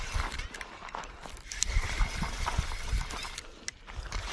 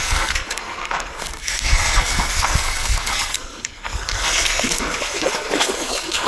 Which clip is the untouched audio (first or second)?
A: first